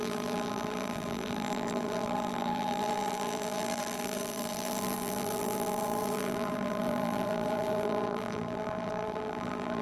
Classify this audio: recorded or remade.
remade